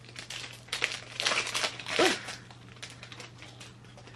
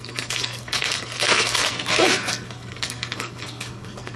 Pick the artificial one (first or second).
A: second